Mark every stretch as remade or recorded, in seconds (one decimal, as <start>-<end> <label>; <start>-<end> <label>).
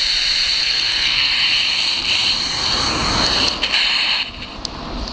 0.0-0.6 recorded; 0.6-1.3 remade; 1.3-5.1 recorded